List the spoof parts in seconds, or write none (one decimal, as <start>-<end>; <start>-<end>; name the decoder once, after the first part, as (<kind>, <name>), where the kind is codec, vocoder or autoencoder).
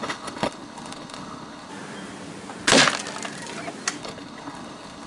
0.0-1.7 (codec, HILCodec); 4.0-5.1